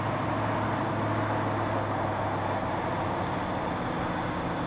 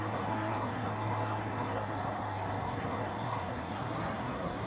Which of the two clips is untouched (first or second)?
first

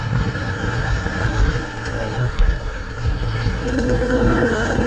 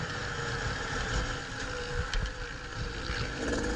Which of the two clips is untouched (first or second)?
second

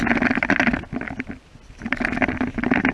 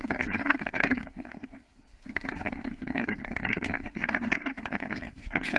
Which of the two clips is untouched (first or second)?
first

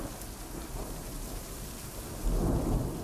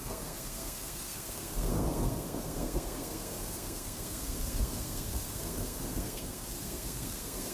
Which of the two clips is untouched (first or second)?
first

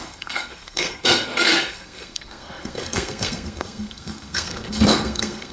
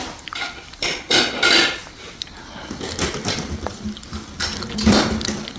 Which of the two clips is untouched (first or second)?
second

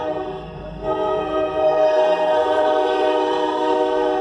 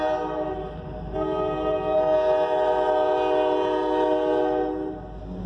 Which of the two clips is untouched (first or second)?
second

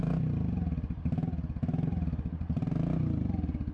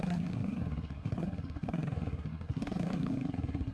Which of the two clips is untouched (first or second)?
first